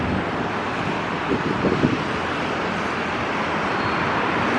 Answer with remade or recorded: remade